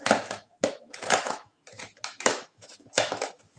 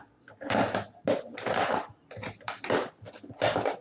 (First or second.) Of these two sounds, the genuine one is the second